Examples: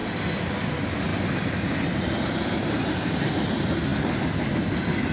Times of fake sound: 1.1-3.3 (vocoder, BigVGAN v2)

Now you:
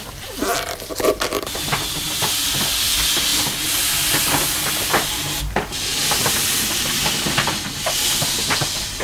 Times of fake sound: none

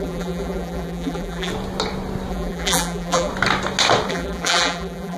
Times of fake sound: 0.0-1.5 (vocoder, BigVGAN v2); 2.3-3.3; 4.1-5.2

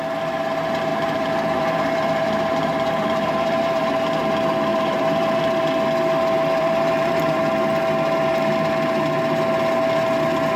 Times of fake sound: 0.9-3.9 (vocoder, BigVGAN v2); 4.7-5.4; 6.6-7.4